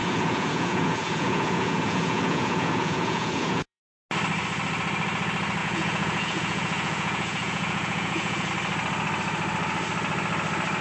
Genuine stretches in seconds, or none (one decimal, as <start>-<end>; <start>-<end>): 3.8-5.6; 8.5-10.8